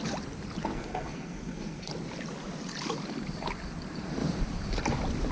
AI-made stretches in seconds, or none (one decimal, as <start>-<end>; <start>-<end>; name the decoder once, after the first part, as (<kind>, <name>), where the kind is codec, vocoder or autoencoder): 0.6-1.9 (codec, SNAC)